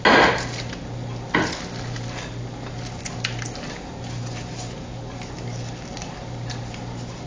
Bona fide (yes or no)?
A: yes